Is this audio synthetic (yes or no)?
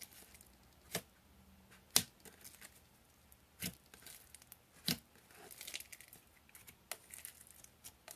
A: no